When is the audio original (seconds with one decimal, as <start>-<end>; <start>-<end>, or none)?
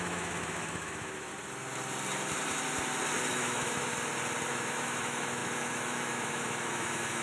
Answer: 1.3-3.3; 3.9-4.5